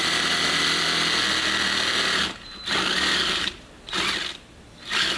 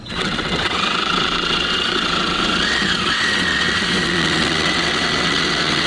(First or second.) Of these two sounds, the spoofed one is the second